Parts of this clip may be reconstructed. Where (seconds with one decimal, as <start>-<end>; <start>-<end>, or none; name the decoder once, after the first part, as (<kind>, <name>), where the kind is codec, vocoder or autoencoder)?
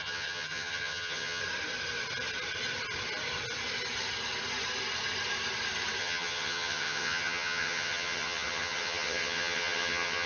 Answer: 0.0-1.4 (vocoder, HiFi-GAN); 6.0-10.3